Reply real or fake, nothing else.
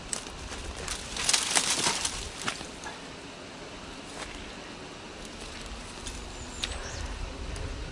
real